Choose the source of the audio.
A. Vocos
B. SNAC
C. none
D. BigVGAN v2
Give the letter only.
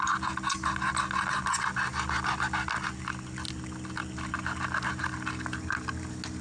C